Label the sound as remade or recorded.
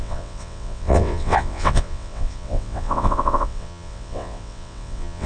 remade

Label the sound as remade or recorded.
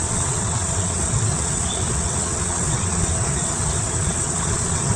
remade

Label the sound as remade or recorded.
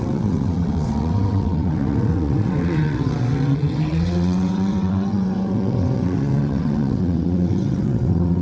remade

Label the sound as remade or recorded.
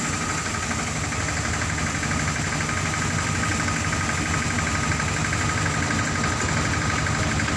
recorded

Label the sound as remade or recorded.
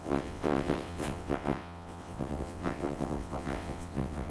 remade